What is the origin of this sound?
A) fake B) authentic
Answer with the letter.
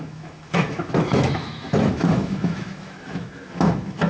A